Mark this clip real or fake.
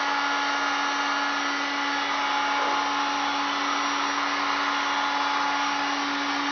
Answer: real